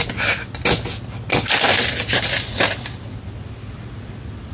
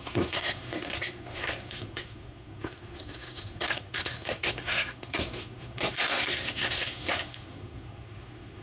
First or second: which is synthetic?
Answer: second